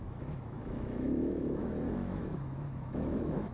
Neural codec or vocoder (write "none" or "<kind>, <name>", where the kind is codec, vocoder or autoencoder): autoencoder, DAC-VAE